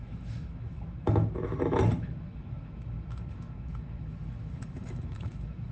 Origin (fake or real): fake